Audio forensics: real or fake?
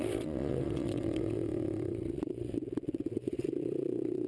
fake